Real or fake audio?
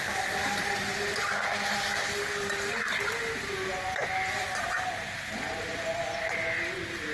real